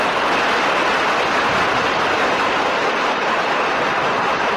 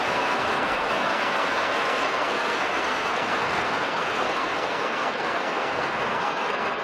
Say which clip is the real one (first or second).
first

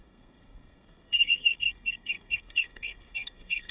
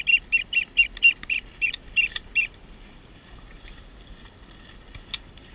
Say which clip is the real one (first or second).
second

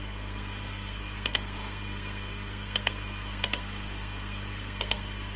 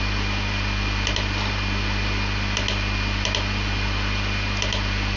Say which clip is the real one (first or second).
second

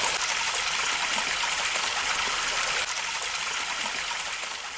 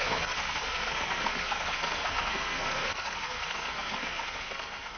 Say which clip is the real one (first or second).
first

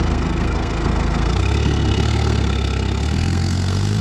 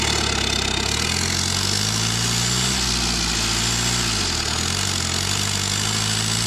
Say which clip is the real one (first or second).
second